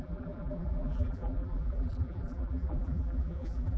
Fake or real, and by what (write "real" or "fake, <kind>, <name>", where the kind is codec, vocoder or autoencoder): fake, vocoder, BigVGAN v2